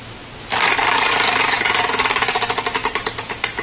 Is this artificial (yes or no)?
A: no